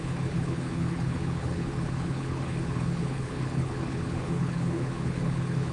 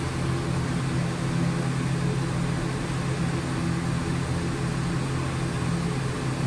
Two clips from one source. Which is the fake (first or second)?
first